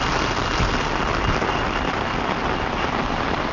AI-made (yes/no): yes